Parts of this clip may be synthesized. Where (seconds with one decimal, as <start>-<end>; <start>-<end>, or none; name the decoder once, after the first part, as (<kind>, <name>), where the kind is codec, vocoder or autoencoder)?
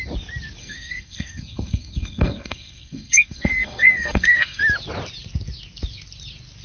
0.6-4.6 (codec, SNAC)